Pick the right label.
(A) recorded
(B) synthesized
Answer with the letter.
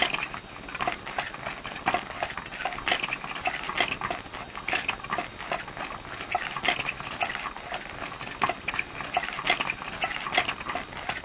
A